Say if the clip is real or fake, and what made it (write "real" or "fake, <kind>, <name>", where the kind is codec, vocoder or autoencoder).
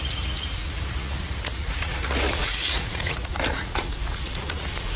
fake, vocoder, Vocos